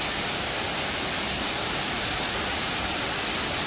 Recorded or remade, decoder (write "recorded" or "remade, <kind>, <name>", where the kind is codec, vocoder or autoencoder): recorded